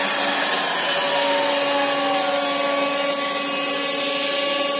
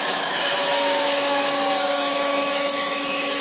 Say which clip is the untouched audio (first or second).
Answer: first